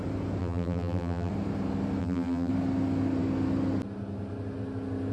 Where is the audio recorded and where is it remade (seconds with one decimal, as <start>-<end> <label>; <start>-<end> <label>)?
0.0-0.4 recorded; 0.4-1.3 remade; 1.3-2.0 recorded; 2.0-2.5 remade; 2.5-5.1 recorded